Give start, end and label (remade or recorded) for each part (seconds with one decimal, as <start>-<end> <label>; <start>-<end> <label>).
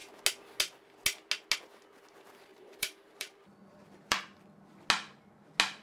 0.0-2.5 recorded; 2.5-4.2 remade; 4.2-5.8 recorded